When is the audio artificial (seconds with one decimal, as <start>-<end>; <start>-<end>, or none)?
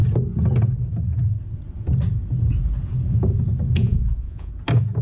3.8-4.5